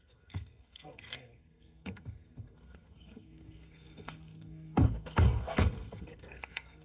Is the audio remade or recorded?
remade